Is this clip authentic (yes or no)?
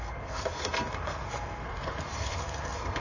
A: no